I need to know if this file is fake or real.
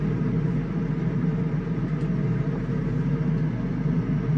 real